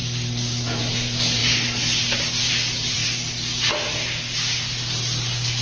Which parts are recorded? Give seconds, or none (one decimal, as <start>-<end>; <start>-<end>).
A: 1.4-2.5